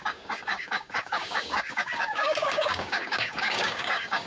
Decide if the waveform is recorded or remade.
remade